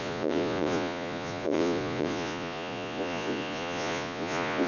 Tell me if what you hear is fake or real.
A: fake